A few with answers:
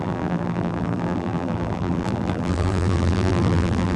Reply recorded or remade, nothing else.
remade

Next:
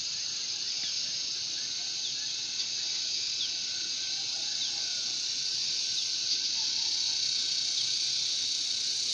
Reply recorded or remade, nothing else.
recorded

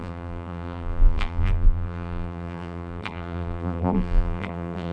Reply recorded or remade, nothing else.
remade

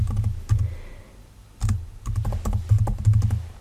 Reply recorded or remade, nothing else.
recorded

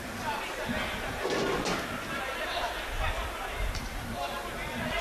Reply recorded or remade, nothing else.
remade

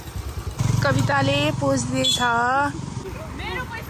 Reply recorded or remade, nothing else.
recorded